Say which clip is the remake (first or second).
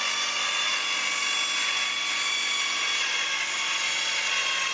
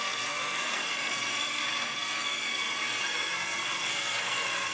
second